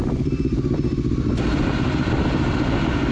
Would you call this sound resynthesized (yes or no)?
no